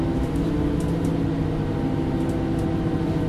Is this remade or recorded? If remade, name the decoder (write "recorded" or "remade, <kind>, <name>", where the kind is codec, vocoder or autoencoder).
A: recorded